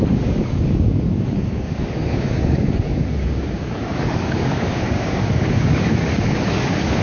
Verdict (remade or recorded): remade